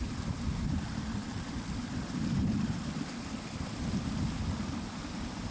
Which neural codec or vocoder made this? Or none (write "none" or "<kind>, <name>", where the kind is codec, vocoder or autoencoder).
vocoder, BigVGAN v2